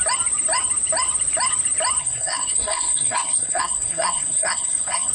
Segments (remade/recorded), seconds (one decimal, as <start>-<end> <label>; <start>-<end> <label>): 0.0-2.0 recorded; 2.0-5.1 remade